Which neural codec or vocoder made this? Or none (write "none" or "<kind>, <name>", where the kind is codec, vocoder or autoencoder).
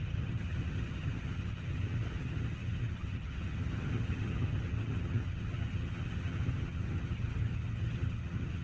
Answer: vocoder, HiFi-GAN